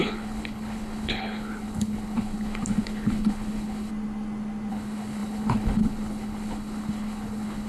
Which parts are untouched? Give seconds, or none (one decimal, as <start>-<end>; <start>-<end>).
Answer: 3.9-4.7